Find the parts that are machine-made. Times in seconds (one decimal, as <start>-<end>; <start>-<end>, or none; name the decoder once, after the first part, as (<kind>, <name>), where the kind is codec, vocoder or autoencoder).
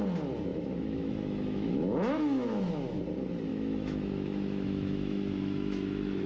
0.5-3.0 (autoencoder, DAC-VAE); 3.5-6.3